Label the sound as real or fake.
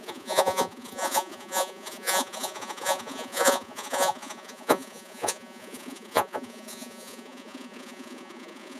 fake